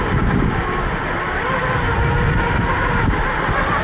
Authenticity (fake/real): real